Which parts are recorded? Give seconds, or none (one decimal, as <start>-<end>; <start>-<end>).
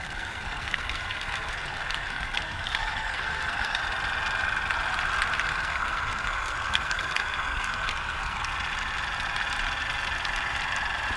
3.8-5.5; 8.5-11.2